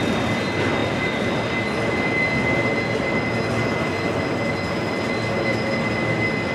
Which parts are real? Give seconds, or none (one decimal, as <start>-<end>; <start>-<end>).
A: 0.0-6.5

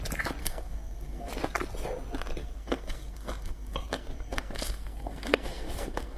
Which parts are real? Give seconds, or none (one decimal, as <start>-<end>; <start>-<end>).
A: 0.0-0.4; 1.3-2.4

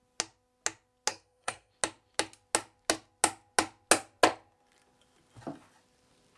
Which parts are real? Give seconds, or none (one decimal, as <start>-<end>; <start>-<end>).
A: 0.0-1.1; 1.7-6.4

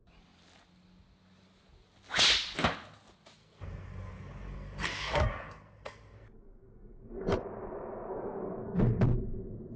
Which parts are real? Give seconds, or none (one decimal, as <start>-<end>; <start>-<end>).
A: 0.0-3.4; 7.4-8.1; 8.8-9.8

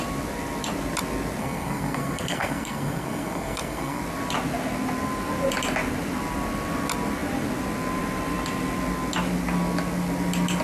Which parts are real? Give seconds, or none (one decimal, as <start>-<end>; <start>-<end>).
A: 0.0-1.4; 4.0-10.6